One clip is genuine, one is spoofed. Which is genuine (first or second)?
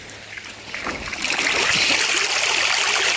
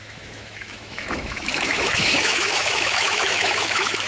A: first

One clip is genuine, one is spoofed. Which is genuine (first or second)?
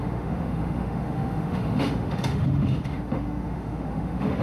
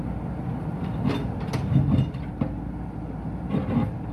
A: second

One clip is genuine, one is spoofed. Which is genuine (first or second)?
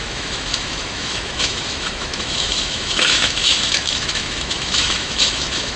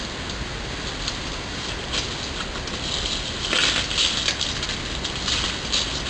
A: second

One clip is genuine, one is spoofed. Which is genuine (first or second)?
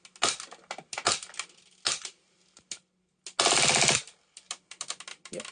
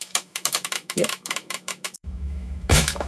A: first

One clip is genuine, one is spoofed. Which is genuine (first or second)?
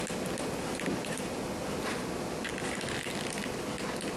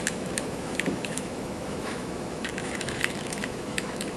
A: first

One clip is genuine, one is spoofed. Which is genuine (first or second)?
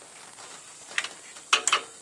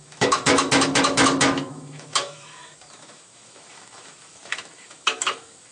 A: first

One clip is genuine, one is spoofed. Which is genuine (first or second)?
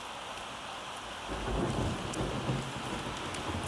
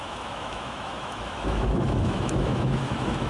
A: first